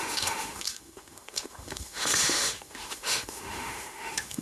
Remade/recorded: remade